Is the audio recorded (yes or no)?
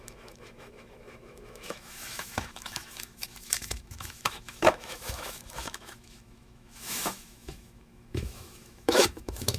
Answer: no